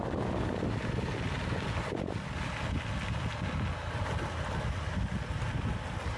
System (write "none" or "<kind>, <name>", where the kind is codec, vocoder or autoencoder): none